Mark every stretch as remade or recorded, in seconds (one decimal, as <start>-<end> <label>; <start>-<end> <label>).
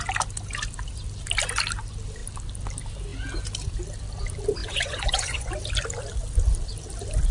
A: 0.0-4.6 recorded; 4.6-5.5 remade; 5.5-7.3 recorded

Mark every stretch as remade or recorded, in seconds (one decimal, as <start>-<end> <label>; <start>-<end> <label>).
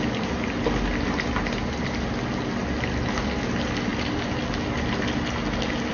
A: 0.0-5.9 recorded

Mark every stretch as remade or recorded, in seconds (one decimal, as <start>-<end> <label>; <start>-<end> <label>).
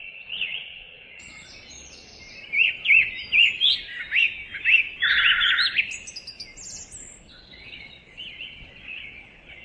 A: 0.0-2.1 remade; 2.1-7.3 recorded; 7.3-9.6 remade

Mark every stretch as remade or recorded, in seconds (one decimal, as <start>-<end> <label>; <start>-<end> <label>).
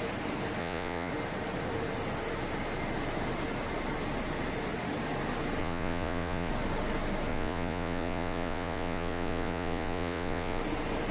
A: 0.0-0.6 recorded; 0.6-1.1 remade; 1.1-5.6 recorded; 5.6-6.5 remade; 6.5-7.3 recorded; 7.3-10.6 remade; 10.6-11.1 recorded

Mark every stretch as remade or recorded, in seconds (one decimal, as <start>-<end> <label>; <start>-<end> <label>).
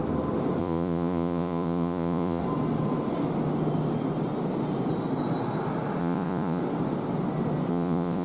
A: 0.0-0.6 recorded; 0.6-2.4 remade; 2.4-6.0 recorded; 6.0-6.6 remade; 6.6-7.7 recorded; 7.7-8.2 remade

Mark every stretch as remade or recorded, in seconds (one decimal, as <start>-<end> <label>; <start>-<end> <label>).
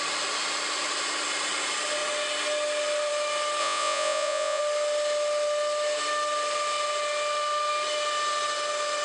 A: 0.0-3.6 recorded; 3.6-4.6 remade; 4.6-9.0 recorded